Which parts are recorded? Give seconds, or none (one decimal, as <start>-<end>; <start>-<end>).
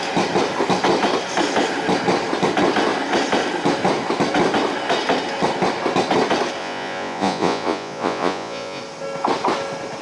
0.0-6.6; 8.8-10.0